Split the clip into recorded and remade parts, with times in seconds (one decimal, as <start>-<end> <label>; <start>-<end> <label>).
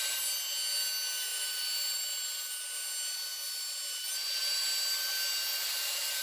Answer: 0.0-1.3 recorded; 1.3-2.4 remade; 2.4-5.5 recorded; 5.5-6.2 remade